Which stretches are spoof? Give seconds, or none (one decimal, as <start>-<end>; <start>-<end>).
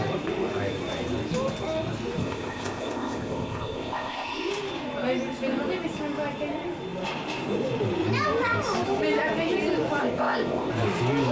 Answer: 2.2-4.5; 10.0-10.7